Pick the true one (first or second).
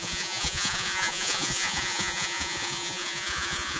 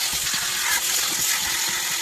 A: second